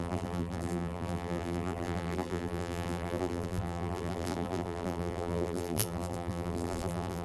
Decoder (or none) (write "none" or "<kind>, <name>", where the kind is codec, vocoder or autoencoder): vocoder, BigVGAN v2